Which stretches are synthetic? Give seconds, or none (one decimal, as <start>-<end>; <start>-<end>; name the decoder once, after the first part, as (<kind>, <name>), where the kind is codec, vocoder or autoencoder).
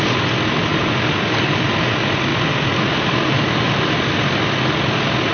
0.7-1.9 (vocoder, BigVGAN v2); 2.3-4.1